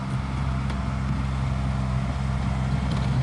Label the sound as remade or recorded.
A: recorded